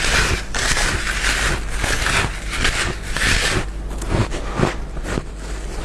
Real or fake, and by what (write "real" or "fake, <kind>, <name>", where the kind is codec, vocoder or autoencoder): real